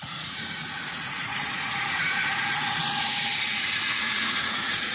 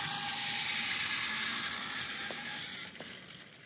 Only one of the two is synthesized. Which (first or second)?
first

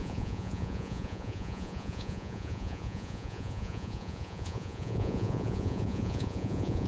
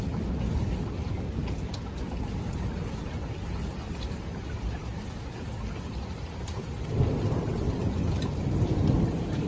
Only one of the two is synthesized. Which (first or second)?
first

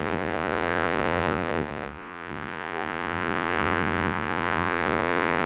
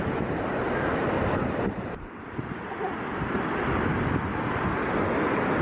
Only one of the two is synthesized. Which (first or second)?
first